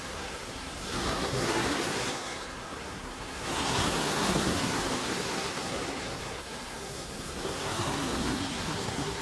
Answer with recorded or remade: remade